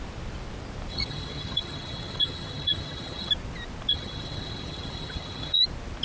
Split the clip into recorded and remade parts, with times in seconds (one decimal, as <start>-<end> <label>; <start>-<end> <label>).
0.0-0.9 recorded; 0.9-3.3 remade; 3.3-3.9 recorded; 3.9-5.6 remade; 5.6-6.0 recorded

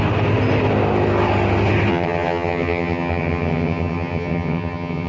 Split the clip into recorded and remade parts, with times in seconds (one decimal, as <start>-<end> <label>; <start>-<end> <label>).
0.0-1.9 recorded; 1.9-5.1 remade

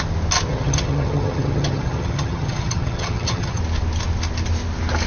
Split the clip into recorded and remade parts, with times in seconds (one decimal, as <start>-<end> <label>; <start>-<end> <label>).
0.0-0.5 recorded; 0.5-3.6 remade; 3.6-5.1 recorded

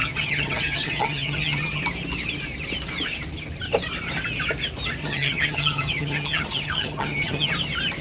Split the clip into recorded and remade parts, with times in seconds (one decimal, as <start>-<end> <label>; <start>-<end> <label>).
0.0-1.8 remade; 1.8-5.0 recorded; 5.0-7.5 remade; 7.5-8.0 recorded

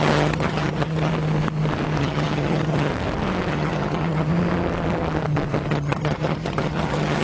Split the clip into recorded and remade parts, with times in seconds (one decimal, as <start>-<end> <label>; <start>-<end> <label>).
0.0-1.1 remade; 1.1-2.0 recorded; 2.0-2.9 remade; 2.9-3.5 recorded; 3.5-4.3 remade; 4.3-5.7 recorded; 5.7-7.2 remade

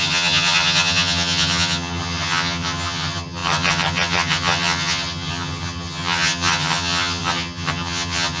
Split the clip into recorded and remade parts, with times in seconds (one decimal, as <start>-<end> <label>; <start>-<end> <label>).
0.0-8.4 remade

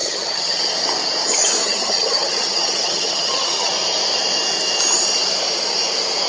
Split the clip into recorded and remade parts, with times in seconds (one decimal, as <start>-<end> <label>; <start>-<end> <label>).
0.0-0.6 remade; 0.6-1.2 recorded; 1.2-3.7 remade; 3.7-6.3 recorded

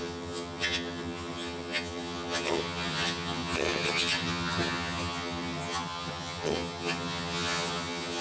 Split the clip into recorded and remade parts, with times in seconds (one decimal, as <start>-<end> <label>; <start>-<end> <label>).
0.0-8.2 remade